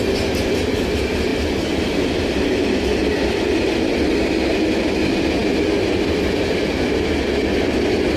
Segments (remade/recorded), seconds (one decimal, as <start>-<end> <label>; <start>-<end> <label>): 0.0-8.2 recorded